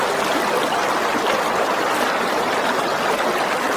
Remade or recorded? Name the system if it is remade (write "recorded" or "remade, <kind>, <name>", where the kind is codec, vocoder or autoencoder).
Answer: recorded